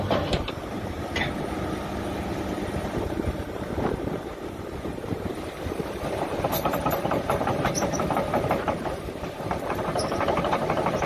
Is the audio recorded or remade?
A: remade